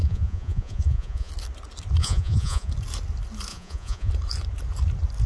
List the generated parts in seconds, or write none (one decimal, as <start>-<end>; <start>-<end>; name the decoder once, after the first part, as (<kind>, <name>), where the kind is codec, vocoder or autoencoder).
0.0-1.3 (vocoder, Vocos); 2.0-2.7; 3.5-4.1